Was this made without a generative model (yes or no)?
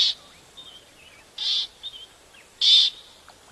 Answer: yes